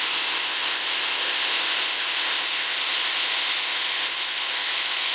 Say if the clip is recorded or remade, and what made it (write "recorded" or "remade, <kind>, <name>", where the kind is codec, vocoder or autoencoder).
remade, codec, ZipCodec